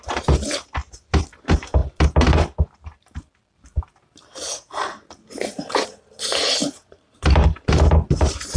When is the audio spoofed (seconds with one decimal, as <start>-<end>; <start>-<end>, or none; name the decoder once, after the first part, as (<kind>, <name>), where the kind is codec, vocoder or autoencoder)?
6.6-7.5 (vocoder, BigVGAN v2)